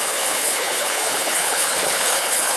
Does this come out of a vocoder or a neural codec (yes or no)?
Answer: yes